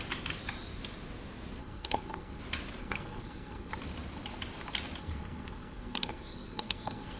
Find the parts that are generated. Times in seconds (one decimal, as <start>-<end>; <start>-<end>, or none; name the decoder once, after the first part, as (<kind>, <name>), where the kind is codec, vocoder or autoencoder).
1.6-2.4 (codec, SNAC); 2.8-3.7; 5.0-7.2